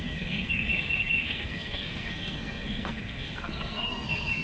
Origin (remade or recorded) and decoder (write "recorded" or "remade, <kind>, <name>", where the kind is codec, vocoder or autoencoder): remade, codec, SNAC